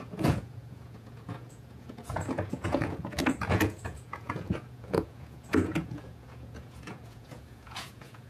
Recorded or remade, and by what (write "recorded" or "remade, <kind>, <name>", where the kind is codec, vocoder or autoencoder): remade, vocoder, Vocos